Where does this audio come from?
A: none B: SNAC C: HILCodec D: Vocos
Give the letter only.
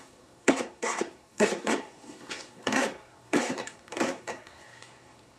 B